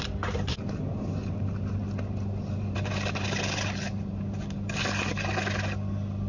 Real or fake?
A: real